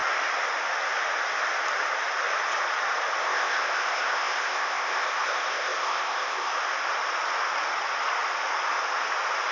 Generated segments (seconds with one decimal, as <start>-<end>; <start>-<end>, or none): 3.2-6.5